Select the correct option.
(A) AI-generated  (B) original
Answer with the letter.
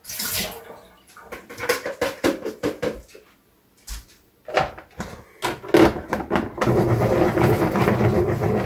B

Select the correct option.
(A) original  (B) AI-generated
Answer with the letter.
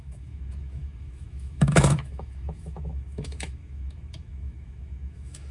B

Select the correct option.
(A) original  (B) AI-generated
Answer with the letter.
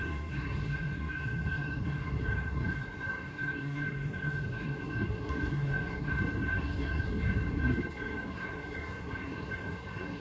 B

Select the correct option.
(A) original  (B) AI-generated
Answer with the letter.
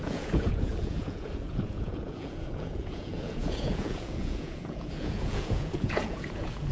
B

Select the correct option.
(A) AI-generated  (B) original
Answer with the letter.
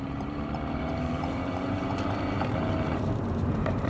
A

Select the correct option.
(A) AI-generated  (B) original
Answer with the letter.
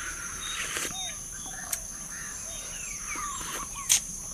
A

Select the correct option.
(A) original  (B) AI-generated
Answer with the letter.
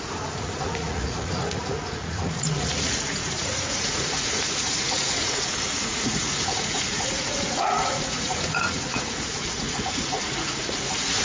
B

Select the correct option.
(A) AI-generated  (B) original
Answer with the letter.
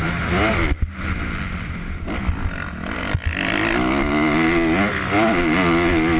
B